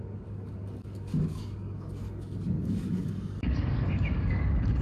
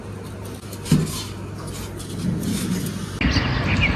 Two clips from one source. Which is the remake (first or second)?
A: first